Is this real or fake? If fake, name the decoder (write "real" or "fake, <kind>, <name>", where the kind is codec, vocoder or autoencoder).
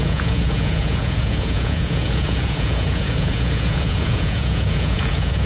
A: fake, vocoder, Vocos